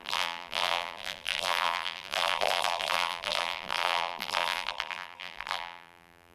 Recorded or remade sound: remade